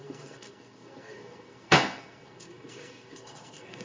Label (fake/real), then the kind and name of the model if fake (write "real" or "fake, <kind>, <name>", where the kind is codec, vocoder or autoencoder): fake, codec, SNAC